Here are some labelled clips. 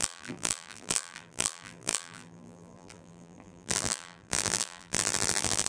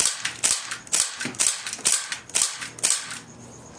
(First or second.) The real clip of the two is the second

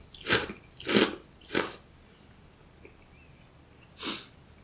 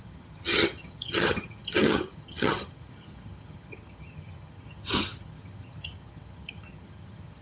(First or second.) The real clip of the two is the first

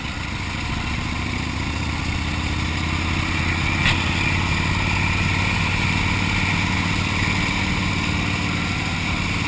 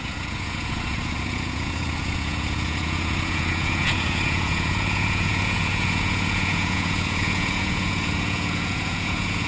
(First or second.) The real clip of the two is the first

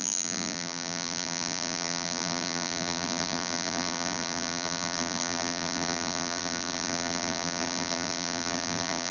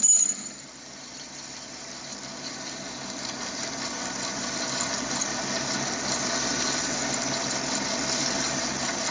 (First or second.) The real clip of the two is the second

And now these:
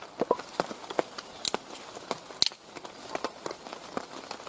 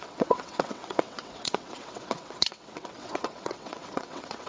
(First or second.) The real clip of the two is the first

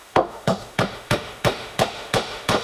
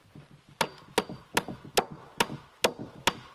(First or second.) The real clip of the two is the second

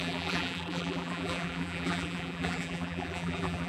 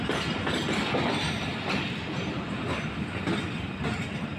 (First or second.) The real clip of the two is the second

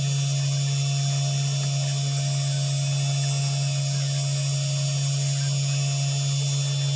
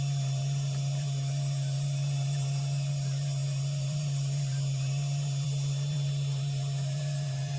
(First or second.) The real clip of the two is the first